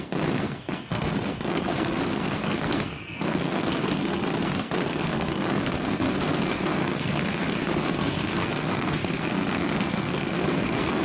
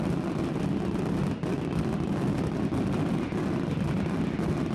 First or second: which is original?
second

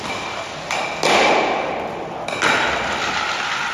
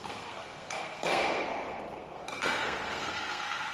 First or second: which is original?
first